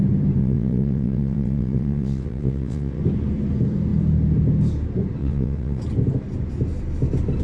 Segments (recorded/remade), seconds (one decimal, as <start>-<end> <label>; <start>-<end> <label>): 0.0-0.4 recorded; 0.4-3.0 remade; 3.0-5.2 recorded; 5.2-5.8 remade; 5.8-7.4 recorded